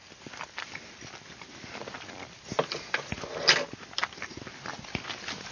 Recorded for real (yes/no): yes